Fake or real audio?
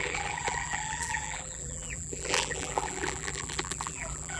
fake